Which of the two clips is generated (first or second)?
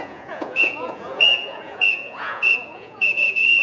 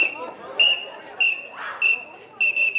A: first